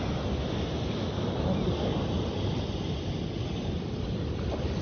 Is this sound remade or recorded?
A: recorded